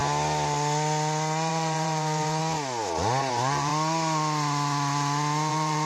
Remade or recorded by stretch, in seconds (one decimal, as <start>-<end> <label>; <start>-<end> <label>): 0.0-1.5 recorded; 1.5-2.4 remade; 2.4-3.3 recorded; 3.3-3.7 remade; 3.7-5.5 recorded; 5.5-5.9 remade